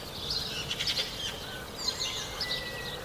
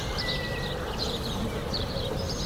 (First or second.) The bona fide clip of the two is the first